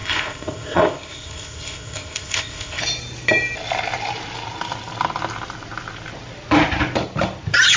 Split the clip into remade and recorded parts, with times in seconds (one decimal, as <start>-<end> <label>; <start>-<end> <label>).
0.0-2.8 remade; 2.8-7.8 recorded